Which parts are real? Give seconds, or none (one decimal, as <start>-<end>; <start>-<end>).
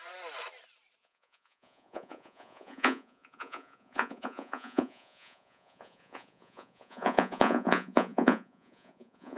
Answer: 0.0-1.0